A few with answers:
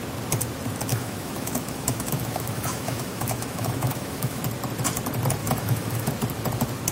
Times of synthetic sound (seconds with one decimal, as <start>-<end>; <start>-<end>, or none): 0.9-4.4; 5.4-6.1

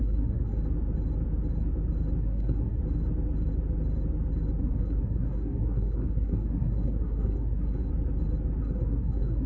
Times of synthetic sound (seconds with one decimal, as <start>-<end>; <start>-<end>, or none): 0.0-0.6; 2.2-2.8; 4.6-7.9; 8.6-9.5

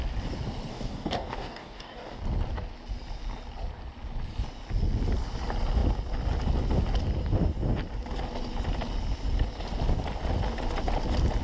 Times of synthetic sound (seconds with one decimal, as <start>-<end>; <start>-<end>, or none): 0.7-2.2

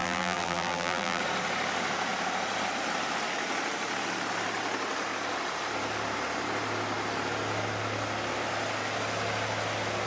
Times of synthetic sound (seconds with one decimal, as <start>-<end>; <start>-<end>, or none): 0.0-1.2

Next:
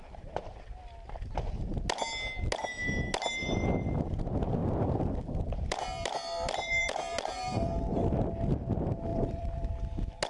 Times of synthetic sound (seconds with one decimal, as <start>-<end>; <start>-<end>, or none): 4.6-8.1; 9.1-9.7

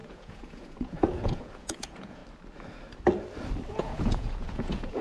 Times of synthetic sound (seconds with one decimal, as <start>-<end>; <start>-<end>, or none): 0.0-2.2; 3.7-5.0

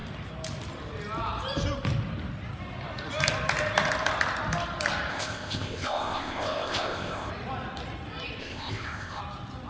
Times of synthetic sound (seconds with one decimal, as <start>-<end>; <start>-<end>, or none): 5.1-7.3; 8.4-9.2